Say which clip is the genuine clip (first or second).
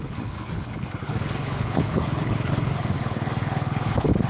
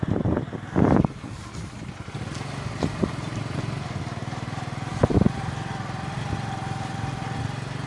second